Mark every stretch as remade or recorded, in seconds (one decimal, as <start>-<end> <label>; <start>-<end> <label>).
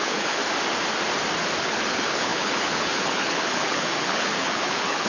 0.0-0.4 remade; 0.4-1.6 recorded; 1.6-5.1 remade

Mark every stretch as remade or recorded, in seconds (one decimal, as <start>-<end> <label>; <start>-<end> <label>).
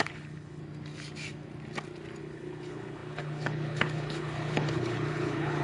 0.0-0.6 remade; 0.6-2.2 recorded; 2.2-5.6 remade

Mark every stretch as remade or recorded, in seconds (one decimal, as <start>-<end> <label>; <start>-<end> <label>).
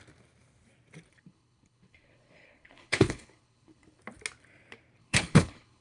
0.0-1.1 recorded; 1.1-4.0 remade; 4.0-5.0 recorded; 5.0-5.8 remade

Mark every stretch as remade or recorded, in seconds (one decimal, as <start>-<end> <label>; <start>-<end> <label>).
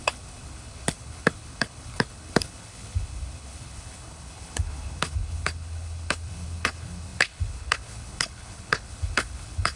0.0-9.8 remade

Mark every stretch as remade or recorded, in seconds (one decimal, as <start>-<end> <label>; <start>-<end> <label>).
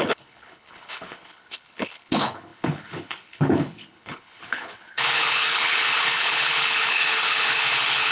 0.0-8.1 remade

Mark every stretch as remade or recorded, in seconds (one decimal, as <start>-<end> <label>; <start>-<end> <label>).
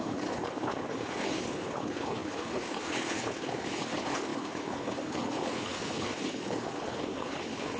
0.0-7.8 remade